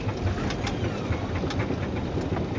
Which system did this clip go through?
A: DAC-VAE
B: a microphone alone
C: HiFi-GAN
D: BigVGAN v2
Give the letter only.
B